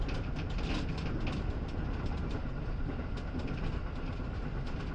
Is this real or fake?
real